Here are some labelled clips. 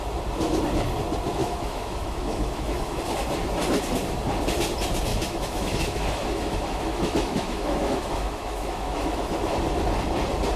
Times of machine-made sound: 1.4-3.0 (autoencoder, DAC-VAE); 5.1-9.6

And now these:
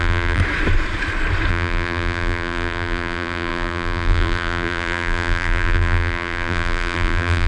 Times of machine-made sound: 0.0-0.4 (vocoder, BigVGAN v2); 1.5-7.5

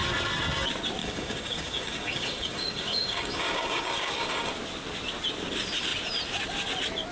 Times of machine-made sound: 1.0-4.5 (codec, DAC)

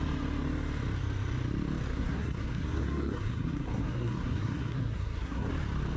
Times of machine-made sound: 1.9-5.5 (codec, SNAC)

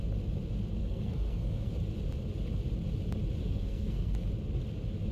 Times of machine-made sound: 0.8-1.7 (codec, SNAC); 3.4-4.3

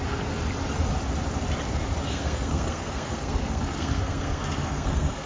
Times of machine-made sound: 2.1-5.3 (codec, SNAC)

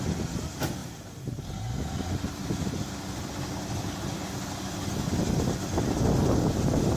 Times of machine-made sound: 0.8-1.8 (vocoder, BigVGAN v2)